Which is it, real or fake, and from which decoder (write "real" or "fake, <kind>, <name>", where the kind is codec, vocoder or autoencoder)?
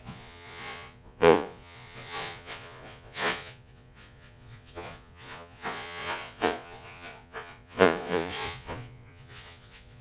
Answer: fake, vocoder, Vocos